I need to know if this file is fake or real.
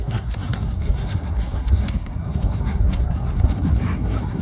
fake